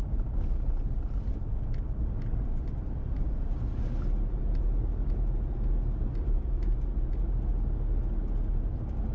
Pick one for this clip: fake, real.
real